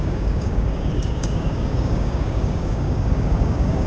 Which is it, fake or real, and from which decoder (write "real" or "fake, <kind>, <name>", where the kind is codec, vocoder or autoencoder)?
fake, codec, DAC